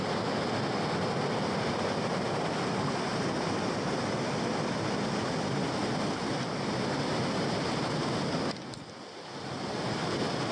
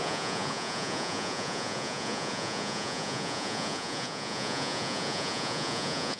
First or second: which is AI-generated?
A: second